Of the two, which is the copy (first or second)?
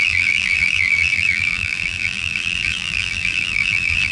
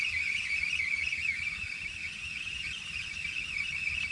first